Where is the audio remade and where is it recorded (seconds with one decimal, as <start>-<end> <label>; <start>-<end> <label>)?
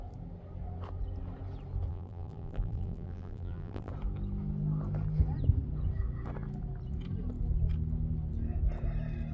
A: 0.0-1.9 recorded; 1.9-3.9 remade; 3.9-9.3 recorded